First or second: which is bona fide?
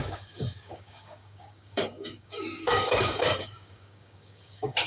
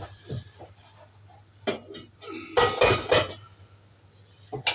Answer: second